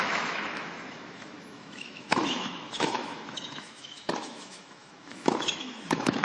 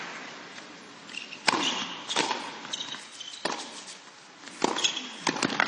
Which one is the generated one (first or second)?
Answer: first